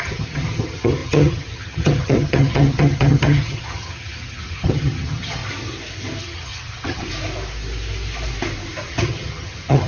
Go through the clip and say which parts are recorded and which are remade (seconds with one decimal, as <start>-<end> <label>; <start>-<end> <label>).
0.0-5.4 remade; 5.4-6.2 recorded; 6.2-7.1 remade; 7.1-8.9 recorded; 8.9-9.9 remade

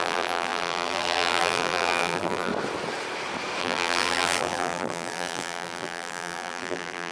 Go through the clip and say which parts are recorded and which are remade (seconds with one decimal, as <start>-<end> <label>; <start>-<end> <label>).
0.0-2.5 remade; 2.5-3.6 recorded; 3.6-7.1 remade

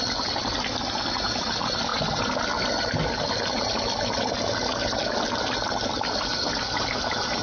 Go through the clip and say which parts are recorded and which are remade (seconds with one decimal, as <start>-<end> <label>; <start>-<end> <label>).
0.0-7.4 recorded

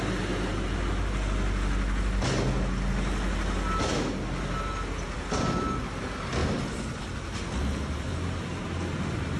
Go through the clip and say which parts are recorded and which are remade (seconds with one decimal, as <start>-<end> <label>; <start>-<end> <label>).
0.0-6.4 recorded; 6.4-8.1 remade; 8.1-9.4 recorded